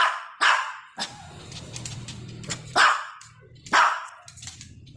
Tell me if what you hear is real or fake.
fake